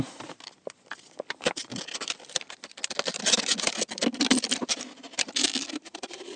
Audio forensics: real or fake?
real